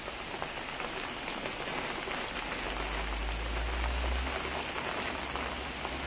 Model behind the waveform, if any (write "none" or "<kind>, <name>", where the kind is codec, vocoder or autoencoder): none